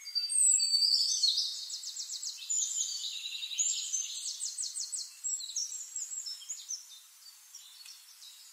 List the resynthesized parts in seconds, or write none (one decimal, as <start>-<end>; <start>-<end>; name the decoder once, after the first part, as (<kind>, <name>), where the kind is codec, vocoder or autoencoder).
0.0-0.5 (vocoder, BigVGAN v2); 1.0-8.5

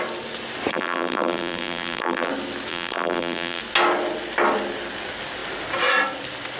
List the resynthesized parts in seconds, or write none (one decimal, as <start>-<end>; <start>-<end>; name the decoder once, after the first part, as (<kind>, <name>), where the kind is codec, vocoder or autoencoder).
0.7-2.3 (vocoder, BigVGAN v2); 2.7-3.6

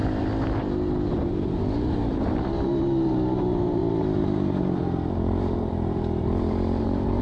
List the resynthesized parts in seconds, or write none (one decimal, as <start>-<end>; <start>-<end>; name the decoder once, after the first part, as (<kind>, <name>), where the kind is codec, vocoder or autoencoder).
1.1-3.8 (vocoder, BigVGAN v2); 5.1-7.2

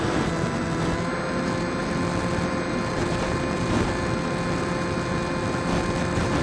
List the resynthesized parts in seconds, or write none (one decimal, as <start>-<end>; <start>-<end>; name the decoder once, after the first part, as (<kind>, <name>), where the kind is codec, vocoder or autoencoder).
1.8-3.0 (vocoder, BigVGAN v2)

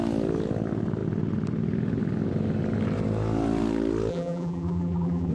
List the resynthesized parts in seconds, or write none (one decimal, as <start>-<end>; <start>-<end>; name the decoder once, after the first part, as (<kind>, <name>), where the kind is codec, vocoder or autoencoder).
4.1-5.3 (vocoder, BigVGAN v2)